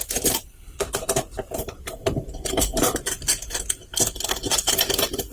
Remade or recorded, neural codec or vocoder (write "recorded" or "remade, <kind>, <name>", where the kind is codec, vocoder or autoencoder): remade, vocoder, BigVGAN v2